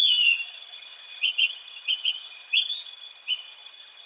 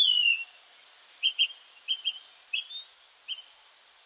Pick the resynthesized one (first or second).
first